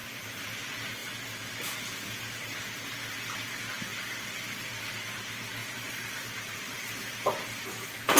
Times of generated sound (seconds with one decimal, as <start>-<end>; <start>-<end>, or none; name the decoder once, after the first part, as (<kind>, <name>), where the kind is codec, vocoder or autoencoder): 0.0-0.6 (vocoder, BigVGAN v2); 5.6-6.9